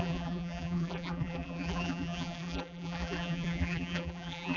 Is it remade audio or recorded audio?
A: remade